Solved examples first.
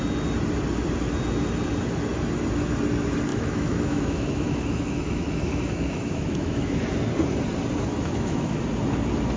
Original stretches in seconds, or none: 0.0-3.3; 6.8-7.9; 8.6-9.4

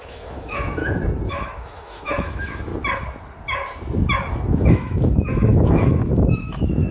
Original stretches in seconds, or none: 0.8-1.3; 2.7-4.3